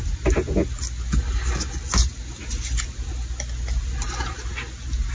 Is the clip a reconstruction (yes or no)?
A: no